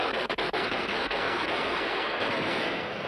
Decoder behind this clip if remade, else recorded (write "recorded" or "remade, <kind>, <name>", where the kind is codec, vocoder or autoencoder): remade, codec, SNAC